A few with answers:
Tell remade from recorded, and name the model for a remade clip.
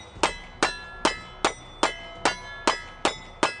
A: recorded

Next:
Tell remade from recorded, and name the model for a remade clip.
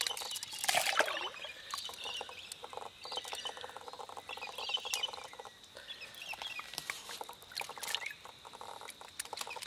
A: recorded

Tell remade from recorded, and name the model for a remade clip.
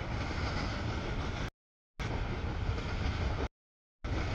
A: recorded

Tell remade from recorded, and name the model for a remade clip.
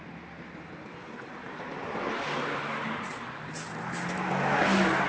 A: recorded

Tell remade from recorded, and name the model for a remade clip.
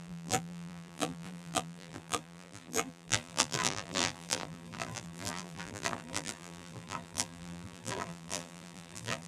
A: remade, vocoder, BigVGAN v2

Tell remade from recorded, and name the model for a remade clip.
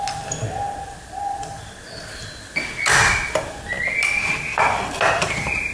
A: recorded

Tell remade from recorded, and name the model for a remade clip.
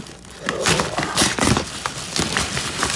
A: recorded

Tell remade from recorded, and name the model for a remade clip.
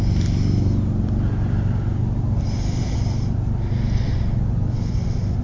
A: recorded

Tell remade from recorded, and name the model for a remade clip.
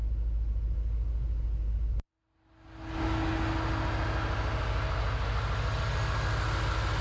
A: recorded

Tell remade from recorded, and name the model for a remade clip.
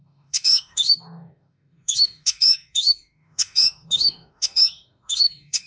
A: remade, autoencoder, DAC-VAE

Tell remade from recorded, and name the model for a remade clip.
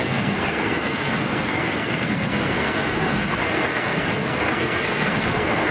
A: remade, codec, SNAC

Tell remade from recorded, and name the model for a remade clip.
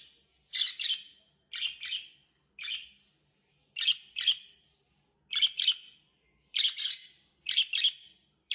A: recorded